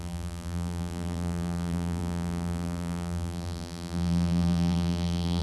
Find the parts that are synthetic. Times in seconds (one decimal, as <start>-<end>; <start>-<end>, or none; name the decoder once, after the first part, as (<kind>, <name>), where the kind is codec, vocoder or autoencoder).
0.0-5.4 (vocoder, BigVGAN v2)